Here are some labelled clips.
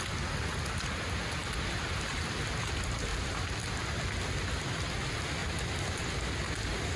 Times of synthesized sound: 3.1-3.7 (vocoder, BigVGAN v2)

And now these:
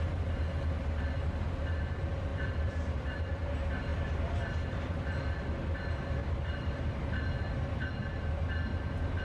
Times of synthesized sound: 2.3-3.2 (vocoder, BigVGAN v2); 3.9-4.9

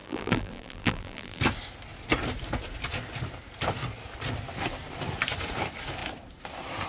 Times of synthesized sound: 0.0-1.4 (vocoder, BigVGAN v2)